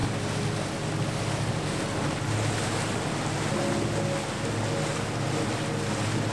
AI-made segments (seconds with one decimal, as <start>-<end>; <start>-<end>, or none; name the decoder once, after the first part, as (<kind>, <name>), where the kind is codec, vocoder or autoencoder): none